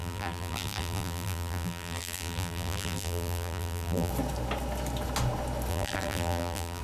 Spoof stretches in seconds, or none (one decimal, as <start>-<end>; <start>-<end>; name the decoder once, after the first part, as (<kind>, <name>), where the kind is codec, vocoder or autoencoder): 0.0-4.1 (vocoder, BigVGAN v2); 5.7-6.8